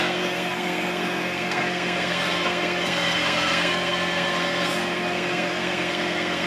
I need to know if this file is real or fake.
fake